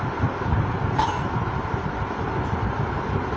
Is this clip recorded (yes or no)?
yes